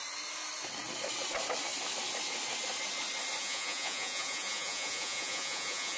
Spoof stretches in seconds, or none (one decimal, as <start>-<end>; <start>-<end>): 3.4-6.0